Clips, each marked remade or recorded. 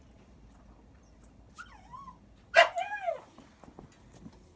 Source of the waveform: recorded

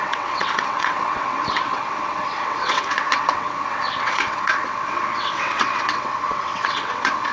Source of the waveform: remade